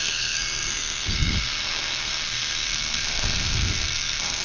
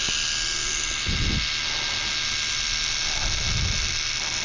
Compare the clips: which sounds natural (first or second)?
second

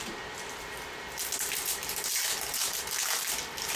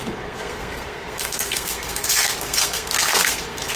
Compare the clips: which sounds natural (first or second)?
first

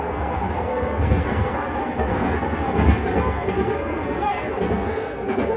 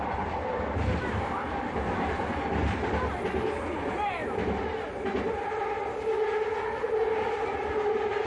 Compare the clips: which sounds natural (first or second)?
second